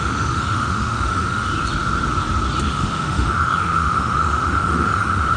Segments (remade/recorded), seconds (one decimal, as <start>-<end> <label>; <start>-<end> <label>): 0.0-1.5 remade; 1.5-2.6 recorded; 2.6-5.4 remade